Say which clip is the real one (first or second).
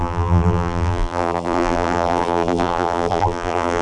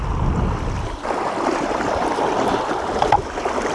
second